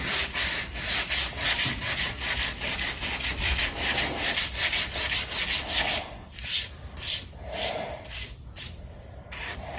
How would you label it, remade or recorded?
remade